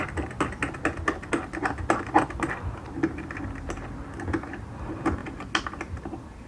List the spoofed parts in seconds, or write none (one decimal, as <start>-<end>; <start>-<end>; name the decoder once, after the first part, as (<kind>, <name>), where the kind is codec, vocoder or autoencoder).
none